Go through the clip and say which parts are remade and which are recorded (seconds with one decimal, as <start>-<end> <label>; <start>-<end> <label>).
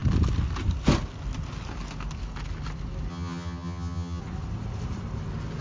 0.0-3.1 recorded; 3.1-4.2 remade; 4.2-5.6 recorded